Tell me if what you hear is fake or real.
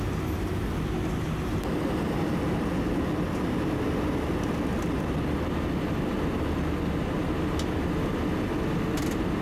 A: real